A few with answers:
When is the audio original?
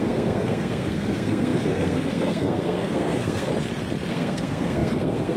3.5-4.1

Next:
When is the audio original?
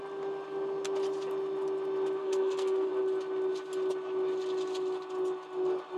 0.0-2.2; 2.9-6.0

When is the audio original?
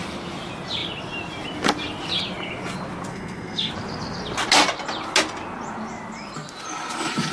0.0-3.1; 3.7-7.3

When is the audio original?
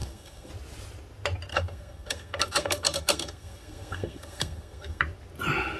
0.5-1.5; 5.0-5.8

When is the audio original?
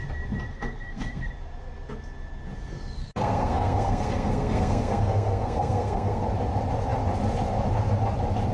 0.0-0.5; 1.3-3.0; 6.2-8.5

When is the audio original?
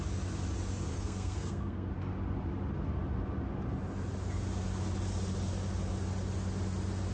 0.0-0.9; 1.9-7.1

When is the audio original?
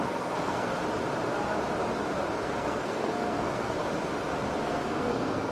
0.7-2.4; 3.8-4.6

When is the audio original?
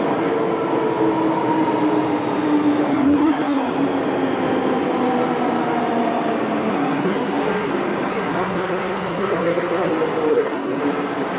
0.0-2.9; 3.7-6.7; 7.7-8.1; 9.9-10.3; 10.8-11.4